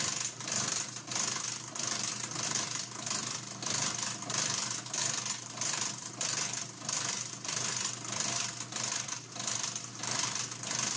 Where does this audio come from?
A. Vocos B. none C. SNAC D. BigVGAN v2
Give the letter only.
D